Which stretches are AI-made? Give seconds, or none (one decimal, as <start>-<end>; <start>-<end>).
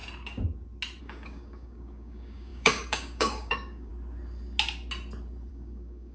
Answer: 1.0-3.9; 5.5-6.1